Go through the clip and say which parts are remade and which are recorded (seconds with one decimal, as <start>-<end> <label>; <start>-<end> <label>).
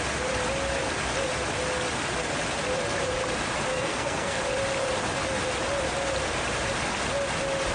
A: 0.0-3.7 recorded; 3.7-4.4 remade; 4.4-7.7 recorded